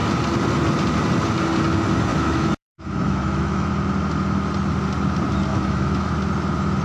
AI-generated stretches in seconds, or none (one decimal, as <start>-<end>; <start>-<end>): 2.1-3.7; 5.5-6.1